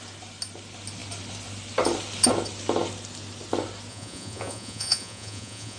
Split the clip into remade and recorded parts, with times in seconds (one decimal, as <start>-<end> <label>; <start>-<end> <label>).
0.0-3.9 recorded; 3.9-5.8 remade